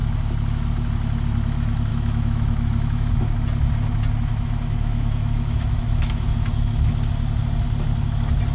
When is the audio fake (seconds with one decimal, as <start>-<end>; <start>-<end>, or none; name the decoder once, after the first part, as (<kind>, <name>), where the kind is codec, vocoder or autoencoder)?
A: 1.9-3.1 (autoencoder, DAC-VAE); 4.3-6.9